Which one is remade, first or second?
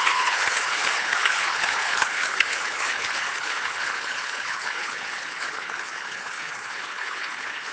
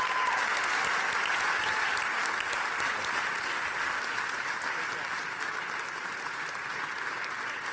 first